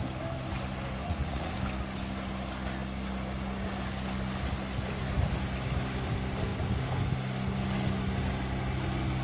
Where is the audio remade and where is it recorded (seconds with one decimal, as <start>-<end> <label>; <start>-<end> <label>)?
0.0-1.0 recorded; 1.0-1.5 remade; 1.5-9.2 recorded